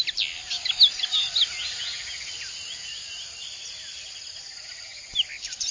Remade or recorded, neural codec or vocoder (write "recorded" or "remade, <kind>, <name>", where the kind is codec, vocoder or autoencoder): recorded